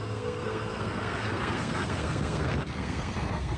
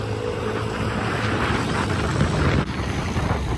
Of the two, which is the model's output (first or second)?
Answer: first